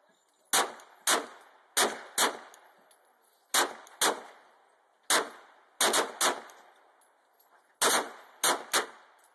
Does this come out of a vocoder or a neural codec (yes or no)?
no